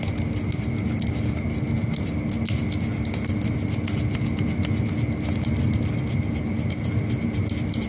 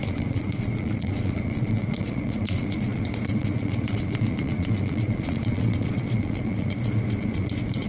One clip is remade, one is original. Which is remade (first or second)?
second